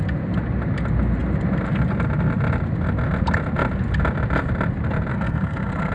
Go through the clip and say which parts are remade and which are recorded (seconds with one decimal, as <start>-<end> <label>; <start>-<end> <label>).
0.0-5.1 recorded; 5.1-5.9 remade